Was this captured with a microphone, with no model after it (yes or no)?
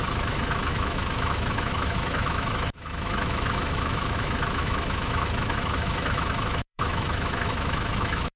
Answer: no